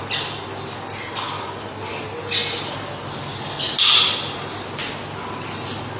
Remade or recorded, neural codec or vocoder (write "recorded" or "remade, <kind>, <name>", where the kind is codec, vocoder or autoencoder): recorded